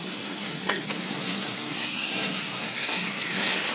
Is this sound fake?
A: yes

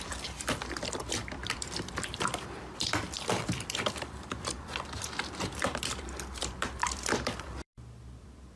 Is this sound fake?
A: yes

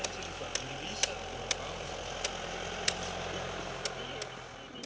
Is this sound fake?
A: no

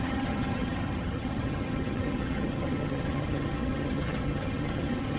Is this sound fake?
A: yes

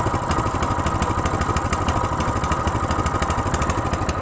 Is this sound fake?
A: no